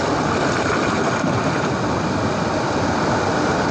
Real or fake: real